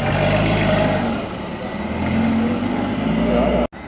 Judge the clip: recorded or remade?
recorded